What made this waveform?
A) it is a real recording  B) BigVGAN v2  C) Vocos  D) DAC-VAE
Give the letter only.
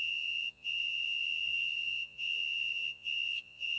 C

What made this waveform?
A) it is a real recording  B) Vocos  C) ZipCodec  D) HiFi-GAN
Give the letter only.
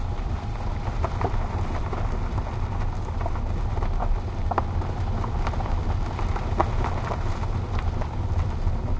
A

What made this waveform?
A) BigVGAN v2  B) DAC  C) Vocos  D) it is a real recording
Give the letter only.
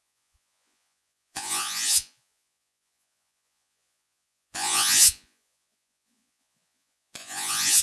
C